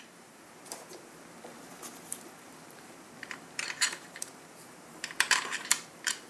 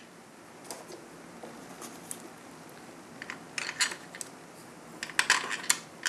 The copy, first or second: first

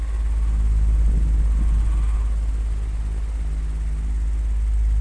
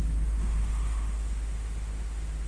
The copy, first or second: second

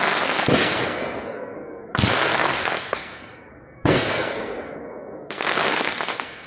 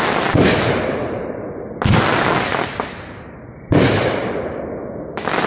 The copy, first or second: first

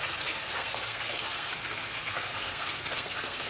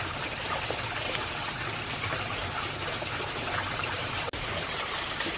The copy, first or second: first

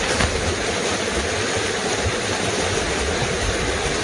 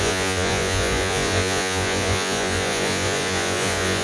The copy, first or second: second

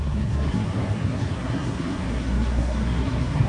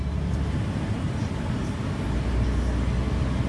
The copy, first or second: first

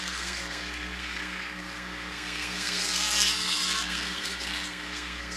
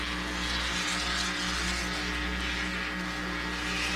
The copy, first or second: first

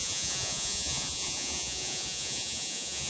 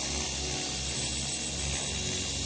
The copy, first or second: first